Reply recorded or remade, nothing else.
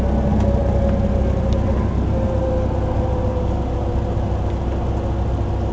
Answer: recorded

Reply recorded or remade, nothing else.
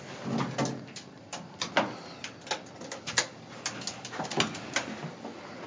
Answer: recorded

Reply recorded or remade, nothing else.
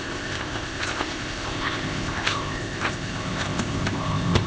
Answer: remade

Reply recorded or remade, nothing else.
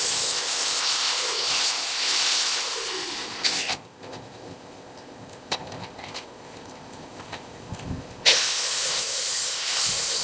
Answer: remade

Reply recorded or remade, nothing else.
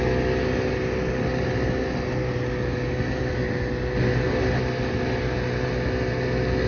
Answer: recorded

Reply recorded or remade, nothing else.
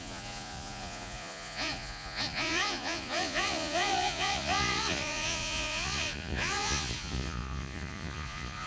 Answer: remade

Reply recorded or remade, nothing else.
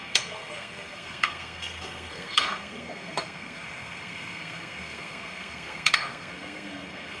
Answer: remade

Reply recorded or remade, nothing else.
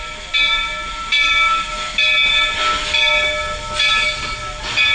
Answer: recorded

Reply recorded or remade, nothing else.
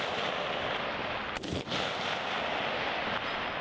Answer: recorded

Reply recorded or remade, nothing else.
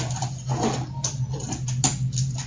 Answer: recorded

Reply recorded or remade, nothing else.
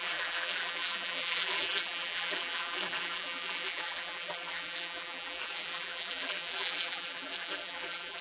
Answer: remade